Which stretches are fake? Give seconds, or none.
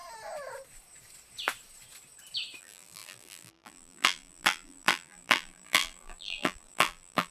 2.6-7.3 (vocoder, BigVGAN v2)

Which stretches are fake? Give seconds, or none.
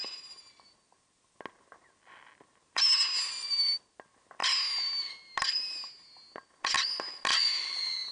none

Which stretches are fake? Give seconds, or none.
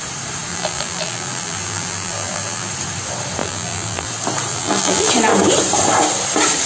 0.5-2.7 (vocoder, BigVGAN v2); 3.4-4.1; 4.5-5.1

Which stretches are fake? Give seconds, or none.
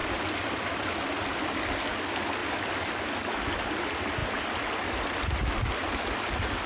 none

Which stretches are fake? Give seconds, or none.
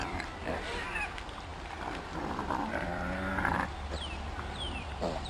0.0-1.5 (vocoder, BigVGAN v2); 2.2-3.3; 4.5-5.3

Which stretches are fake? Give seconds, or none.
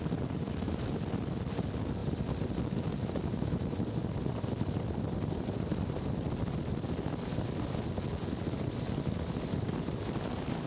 2.9-6.1 (vocoder, BigVGAN v2)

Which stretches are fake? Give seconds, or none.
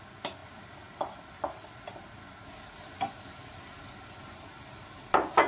0.4-1.2 (vocoder, BigVGAN v2)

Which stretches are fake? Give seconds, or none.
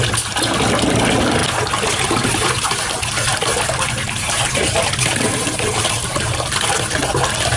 0.0-1.4 (vocoder, BigVGAN v2); 2.6-3.3; 5.7-7.6